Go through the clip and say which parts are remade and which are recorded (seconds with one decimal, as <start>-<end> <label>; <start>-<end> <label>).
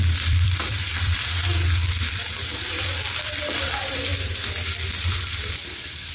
0.0-1.5 remade; 1.5-2.7 recorded; 2.7-4.1 remade; 4.1-6.1 recorded